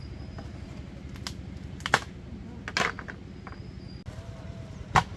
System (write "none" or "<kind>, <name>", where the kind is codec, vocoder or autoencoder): none